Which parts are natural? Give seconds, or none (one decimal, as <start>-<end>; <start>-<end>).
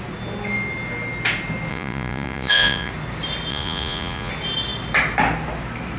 0.0-1.7; 2.9-3.5; 4.3-6.0